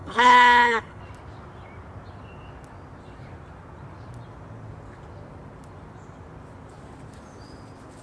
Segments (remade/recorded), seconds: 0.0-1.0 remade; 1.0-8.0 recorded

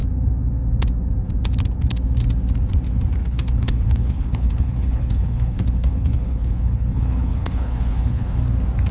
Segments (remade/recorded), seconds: 0.0-3.2 recorded; 3.2-8.4 remade; 8.4-8.9 recorded

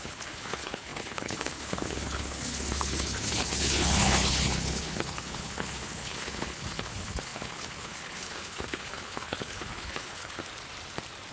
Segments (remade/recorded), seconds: 0.0-10.4 remade; 10.4-11.3 recorded

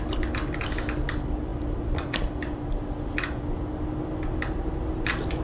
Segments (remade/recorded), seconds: 0.0-5.4 recorded

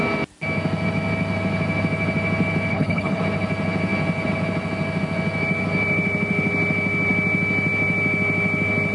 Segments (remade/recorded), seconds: 0.0-2.7 recorded; 2.7-3.2 remade; 3.2-8.9 recorded

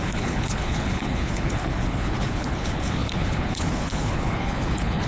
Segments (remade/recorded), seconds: 0.0-5.1 remade